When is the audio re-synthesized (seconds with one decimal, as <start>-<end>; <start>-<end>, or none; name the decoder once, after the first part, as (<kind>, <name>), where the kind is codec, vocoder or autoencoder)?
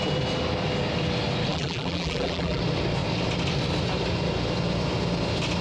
1.5-2.6 (vocoder, BigVGAN v2)